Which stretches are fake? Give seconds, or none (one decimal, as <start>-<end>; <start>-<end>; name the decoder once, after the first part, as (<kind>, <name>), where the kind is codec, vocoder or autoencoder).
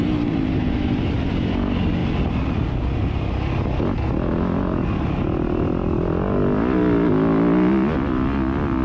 none